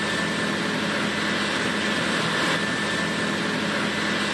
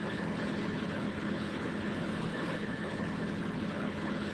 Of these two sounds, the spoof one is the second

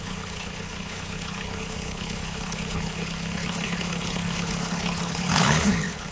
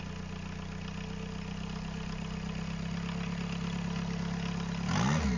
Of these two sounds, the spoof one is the first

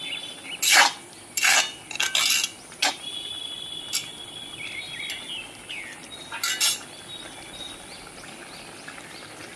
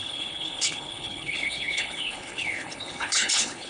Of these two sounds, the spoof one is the second